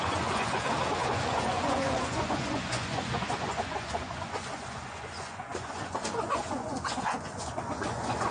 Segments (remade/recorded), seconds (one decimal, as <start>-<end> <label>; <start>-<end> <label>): 0.0-8.3 remade

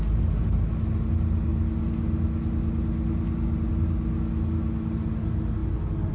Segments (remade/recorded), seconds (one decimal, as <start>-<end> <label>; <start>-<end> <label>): 0.0-6.1 recorded